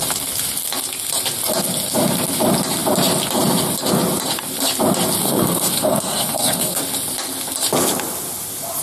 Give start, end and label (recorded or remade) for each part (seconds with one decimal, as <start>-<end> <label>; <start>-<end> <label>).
0.0-5.2 recorded; 5.2-6.8 remade; 6.8-8.8 recorded